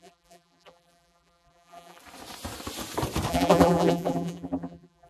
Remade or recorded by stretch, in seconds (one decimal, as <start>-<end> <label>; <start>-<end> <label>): 0.0-2.0 remade; 2.0-3.3 recorded; 3.3-5.1 remade